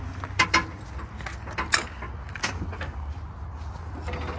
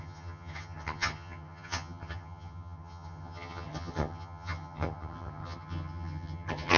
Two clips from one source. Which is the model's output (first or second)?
second